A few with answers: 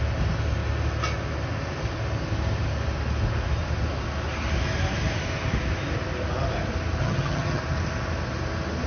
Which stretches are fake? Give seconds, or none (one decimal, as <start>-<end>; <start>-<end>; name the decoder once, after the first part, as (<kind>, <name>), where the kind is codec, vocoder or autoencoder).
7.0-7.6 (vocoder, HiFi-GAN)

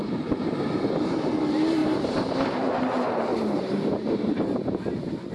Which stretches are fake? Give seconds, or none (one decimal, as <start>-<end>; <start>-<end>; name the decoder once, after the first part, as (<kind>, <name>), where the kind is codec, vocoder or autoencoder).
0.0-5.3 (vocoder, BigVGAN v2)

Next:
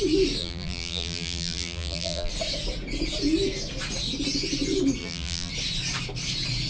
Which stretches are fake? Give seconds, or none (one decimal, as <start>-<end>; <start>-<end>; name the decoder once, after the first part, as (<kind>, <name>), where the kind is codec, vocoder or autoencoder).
0.4-2.3 (vocoder, BigVGAN v2); 5.0-5.5

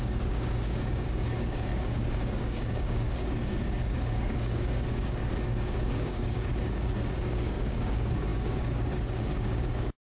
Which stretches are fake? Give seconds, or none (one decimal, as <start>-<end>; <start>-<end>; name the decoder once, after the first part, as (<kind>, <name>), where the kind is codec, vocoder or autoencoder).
0.0-10.1 (codec, DAC)

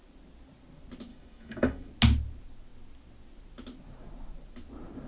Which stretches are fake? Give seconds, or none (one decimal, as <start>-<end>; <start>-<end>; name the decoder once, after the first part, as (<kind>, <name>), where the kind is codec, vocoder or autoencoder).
1.1-1.9 (autoencoder, DAC-VAE)